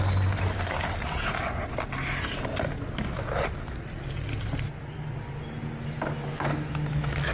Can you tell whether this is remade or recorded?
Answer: recorded